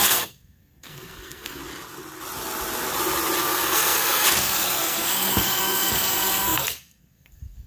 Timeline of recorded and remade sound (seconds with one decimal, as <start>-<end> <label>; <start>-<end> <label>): 0.0-1.6 remade; 1.6-3.4 recorded; 3.4-7.7 remade